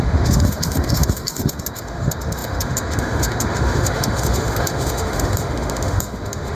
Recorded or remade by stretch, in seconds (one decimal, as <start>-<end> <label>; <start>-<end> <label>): 0.0-6.5 remade